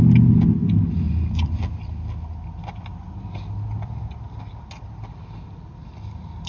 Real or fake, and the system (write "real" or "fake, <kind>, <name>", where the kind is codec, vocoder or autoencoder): real